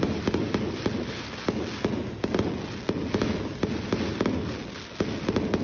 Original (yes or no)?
yes